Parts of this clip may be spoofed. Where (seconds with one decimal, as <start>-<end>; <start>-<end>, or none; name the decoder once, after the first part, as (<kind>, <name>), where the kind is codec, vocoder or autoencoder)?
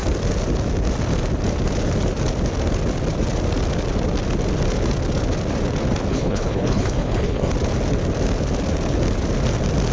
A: 6.1-7.5 (codec, HILCodec)